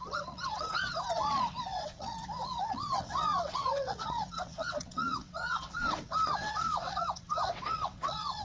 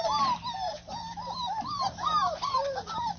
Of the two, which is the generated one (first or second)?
first